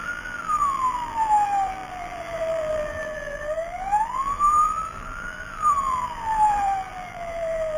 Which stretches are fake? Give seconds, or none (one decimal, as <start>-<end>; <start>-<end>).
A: 0.0-7.8

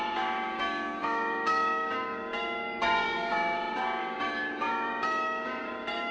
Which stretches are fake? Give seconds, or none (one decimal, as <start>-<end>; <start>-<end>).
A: 0.0-6.1

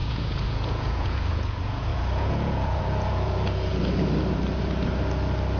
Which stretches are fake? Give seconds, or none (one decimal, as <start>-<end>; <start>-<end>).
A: 0.0-3.7

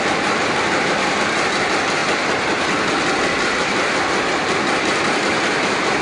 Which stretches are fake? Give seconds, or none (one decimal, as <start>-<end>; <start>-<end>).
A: none

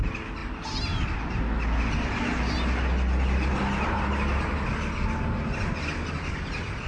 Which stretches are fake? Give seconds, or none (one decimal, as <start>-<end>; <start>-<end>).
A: none

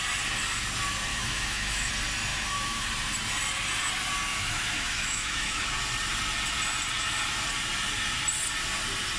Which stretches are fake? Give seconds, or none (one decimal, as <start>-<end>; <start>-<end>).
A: 1.1-1.9; 2.3-2.9; 4.3-5.6

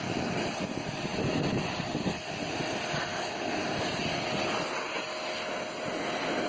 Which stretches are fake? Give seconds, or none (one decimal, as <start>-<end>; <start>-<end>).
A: 3.1-3.6

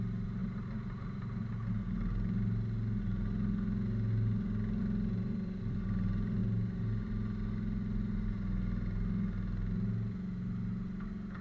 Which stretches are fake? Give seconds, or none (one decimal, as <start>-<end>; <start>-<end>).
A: 0.0-0.4; 4.8-6.4